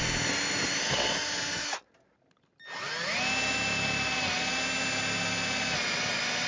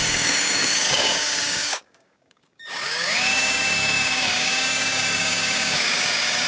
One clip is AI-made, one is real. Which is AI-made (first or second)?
second